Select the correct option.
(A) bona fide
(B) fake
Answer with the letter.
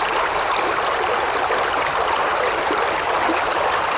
A